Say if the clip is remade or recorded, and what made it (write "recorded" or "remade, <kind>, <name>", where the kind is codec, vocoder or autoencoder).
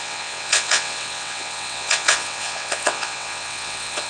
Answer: remade, vocoder, WaveNeXt